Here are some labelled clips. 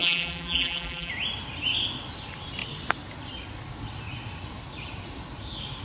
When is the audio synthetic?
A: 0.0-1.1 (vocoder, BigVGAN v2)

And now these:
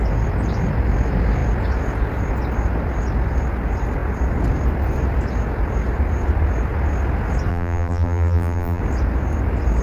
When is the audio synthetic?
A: 7.5-8.8 (vocoder, BigVGAN v2)